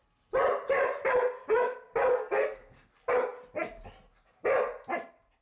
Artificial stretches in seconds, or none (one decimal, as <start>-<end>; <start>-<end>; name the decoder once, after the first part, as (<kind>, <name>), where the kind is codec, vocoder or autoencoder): 2.1-2.9 (codec, SNAC)